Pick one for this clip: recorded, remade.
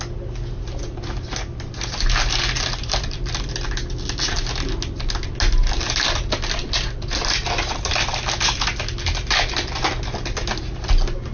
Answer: recorded